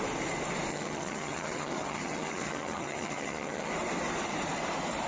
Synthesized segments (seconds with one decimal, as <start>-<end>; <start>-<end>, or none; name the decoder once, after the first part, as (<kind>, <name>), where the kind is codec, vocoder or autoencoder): 0.7-3.7 (vocoder, HiFi-GAN)